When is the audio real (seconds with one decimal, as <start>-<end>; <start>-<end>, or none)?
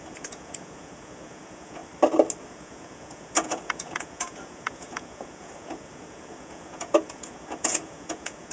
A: 1.8-2.4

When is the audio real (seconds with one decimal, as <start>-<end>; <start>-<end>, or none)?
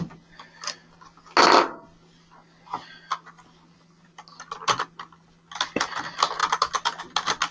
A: 0.0-7.5